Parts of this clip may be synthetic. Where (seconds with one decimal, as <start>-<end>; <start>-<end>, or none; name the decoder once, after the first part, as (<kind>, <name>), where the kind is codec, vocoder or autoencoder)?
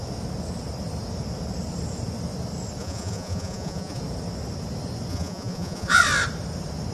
2.8-4.0 (vocoder, Vocos); 5.1-6.0